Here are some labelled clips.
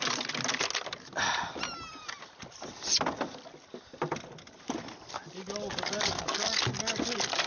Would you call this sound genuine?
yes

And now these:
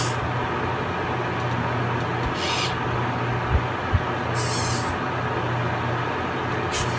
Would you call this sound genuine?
yes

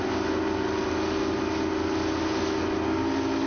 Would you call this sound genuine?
yes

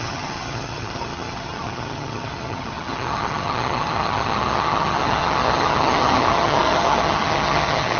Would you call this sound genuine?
no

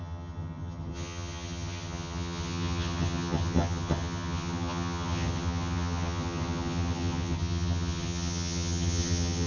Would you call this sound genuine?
no